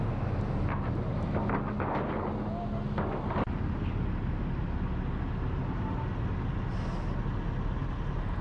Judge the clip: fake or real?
real